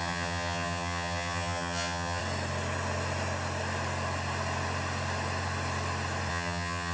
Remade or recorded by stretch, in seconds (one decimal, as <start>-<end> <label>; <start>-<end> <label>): 0.0-2.2 remade; 2.2-6.3 recorded; 6.3-6.9 remade